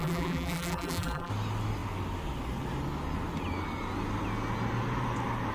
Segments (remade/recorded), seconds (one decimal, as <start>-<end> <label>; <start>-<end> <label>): 0.0-1.3 remade; 1.3-5.5 recorded